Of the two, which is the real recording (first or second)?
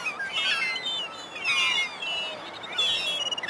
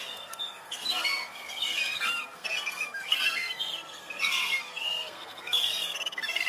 first